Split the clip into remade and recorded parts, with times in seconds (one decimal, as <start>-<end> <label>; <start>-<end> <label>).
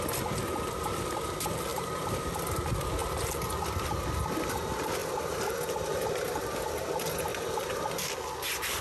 0.0-1.7 recorded; 1.7-2.2 remade; 2.2-5.0 recorded; 5.0-5.6 remade; 5.6-7.3 recorded; 7.3-7.8 remade; 7.8-8.8 recorded